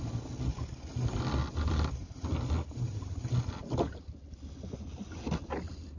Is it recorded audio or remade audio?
recorded